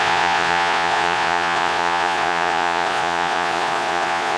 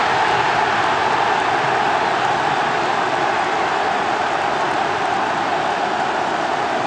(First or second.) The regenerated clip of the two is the first